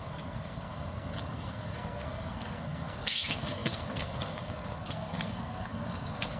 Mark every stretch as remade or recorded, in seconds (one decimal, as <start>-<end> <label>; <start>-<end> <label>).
0.0-6.4 remade